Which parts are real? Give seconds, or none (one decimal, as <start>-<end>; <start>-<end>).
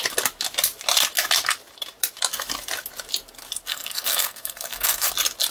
0.0-3.7; 5.1-5.5